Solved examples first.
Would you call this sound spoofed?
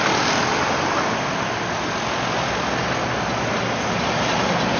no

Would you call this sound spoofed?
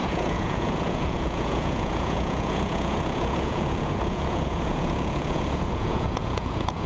yes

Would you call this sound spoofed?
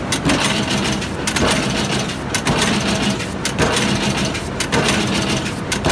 no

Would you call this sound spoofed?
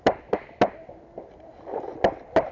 no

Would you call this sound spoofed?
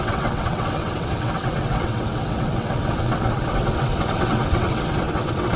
yes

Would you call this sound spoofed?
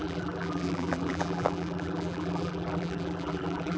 yes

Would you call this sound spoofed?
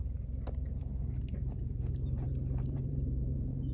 yes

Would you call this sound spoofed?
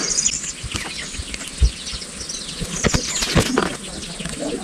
no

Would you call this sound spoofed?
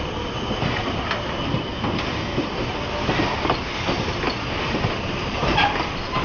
no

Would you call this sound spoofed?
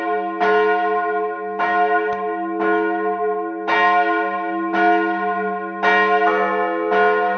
no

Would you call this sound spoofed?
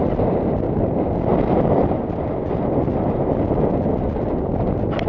no